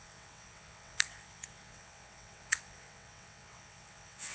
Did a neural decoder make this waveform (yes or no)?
yes